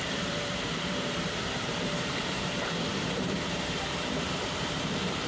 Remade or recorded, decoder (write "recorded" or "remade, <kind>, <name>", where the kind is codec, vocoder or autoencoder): remade, vocoder, BigVGAN v2